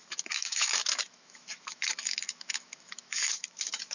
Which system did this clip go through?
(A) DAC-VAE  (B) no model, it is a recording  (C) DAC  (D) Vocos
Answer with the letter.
A